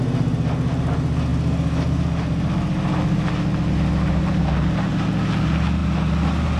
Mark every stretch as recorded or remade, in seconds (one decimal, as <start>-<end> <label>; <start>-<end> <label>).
0.0-6.6 recorded